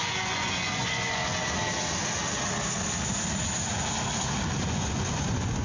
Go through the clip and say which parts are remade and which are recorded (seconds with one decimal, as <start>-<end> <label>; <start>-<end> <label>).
0.0-1.2 remade; 1.2-4.6 recorded; 4.6-5.6 remade